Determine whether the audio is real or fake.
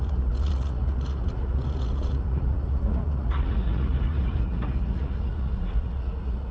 fake